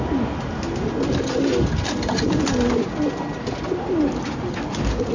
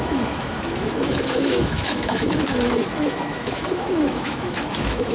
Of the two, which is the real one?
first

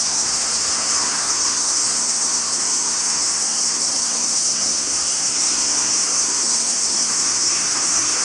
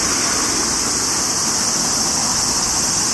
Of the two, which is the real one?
second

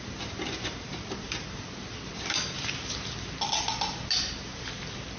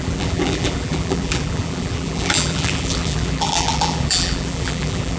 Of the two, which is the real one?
first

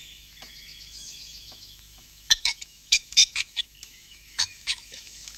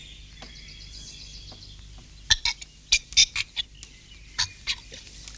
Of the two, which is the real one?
second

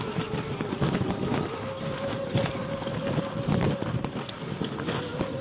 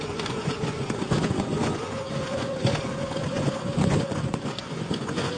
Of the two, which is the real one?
first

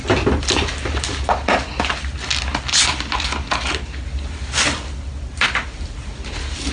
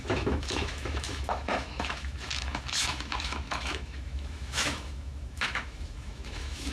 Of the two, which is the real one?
first